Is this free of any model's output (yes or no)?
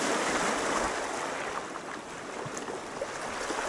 yes